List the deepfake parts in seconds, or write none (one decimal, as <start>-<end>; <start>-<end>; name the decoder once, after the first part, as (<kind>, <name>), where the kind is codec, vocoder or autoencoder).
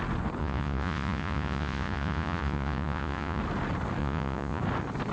0.4-3.4 (vocoder, Vocos); 4.0-4.6